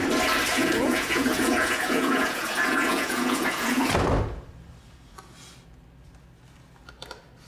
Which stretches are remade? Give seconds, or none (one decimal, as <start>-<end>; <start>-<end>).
0.5-3.9